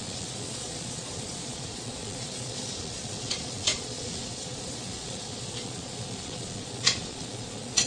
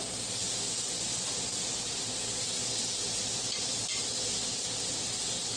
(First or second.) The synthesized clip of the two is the first